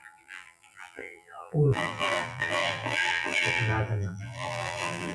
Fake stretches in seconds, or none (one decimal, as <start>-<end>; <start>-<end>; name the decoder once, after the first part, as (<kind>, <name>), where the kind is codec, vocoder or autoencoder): 0.0-5.1 (vocoder, BigVGAN v2)